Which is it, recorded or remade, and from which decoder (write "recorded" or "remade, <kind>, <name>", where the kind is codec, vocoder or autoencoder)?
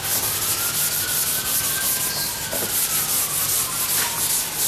recorded